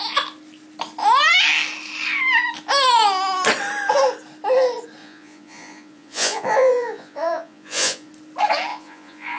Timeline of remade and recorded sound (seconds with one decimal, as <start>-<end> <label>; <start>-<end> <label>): 0.0-5.0 recorded; 5.0-8.1 remade; 8.1-8.7 recorded; 8.7-9.4 remade